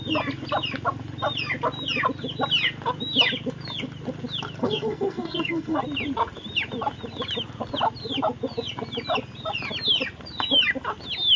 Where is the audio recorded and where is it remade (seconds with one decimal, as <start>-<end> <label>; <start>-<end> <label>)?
0.0-4.6 recorded; 4.6-5.8 remade; 5.8-11.4 recorded